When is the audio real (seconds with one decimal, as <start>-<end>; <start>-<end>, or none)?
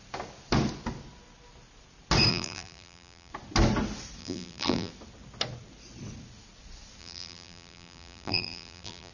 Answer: 0.0-2.3; 3.3-4.2; 4.9-7.0